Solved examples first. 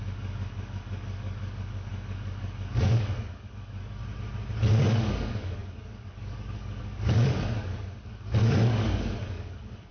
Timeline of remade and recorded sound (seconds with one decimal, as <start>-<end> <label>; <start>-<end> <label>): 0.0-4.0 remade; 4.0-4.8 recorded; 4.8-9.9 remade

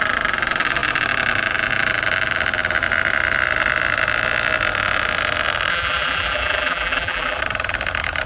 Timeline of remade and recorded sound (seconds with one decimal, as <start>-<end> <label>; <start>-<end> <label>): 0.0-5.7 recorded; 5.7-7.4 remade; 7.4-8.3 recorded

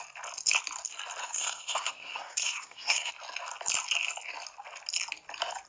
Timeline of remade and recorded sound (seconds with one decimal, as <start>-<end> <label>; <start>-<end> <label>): 0.0-1.2 recorded; 1.2-3.1 remade; 3.1-5.7 recorded

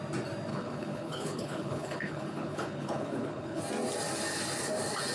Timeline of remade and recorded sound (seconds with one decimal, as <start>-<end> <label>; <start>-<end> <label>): 0.0-0.5 recorded; 0.5-3.6 remade; 3.6-5.1 recorded